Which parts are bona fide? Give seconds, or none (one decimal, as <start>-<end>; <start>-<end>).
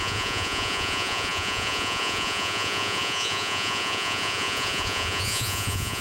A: none